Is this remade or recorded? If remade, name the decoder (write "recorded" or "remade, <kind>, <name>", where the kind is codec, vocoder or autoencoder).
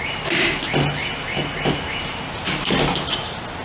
recorded